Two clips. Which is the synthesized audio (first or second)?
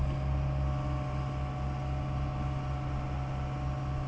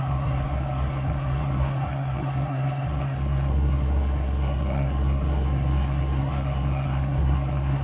second